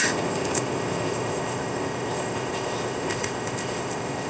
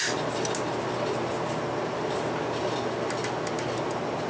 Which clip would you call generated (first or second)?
first